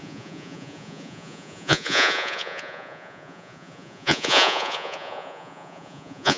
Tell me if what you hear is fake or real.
fake